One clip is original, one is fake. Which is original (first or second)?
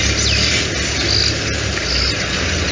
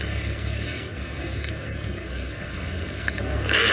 first